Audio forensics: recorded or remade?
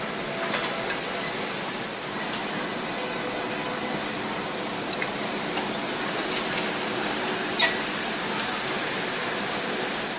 remade